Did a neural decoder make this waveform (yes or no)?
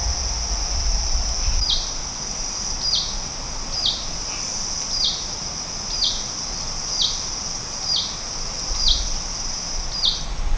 no